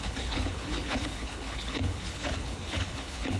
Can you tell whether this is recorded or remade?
remade